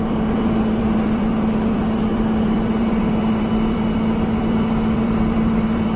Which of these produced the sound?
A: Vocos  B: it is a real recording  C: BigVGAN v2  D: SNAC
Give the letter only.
C